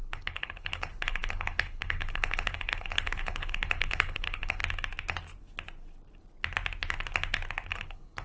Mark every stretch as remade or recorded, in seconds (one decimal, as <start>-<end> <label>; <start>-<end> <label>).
0.0-4.6 remade; 4.6-7.7 recorded; 7.7-8.2 remade